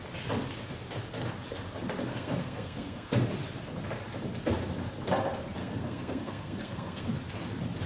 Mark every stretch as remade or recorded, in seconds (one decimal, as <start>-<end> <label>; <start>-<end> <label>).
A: 0.0-2.1 recorded; 2.1-3.1 remade; 3.1-5.6 recorded; 5.6-7.1 remade; 7.1-7.9 recorded